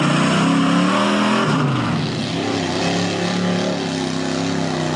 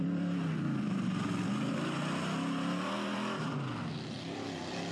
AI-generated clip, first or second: second